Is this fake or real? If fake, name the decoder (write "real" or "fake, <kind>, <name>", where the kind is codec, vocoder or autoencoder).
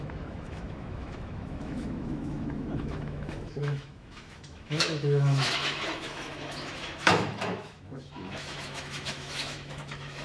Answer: fake, autoencoder, DAC-VAE